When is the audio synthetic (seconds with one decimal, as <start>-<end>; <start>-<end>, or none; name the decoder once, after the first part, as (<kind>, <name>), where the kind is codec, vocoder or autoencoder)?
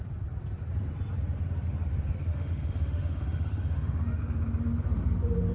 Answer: 2.3-4.2 (autoencoder, DAC-VAE)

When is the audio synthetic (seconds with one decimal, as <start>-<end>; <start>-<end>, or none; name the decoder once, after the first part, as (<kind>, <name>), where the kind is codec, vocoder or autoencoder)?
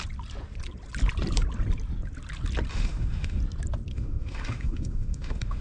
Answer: 2.7-3.4 (autoencoder, DAC-VAE); 3.9-5.6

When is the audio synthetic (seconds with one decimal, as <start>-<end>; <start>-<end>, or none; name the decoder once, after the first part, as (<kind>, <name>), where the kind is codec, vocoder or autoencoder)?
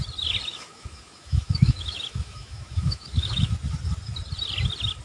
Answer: 0.5-3.5 (autoencoder, DAC-VAE)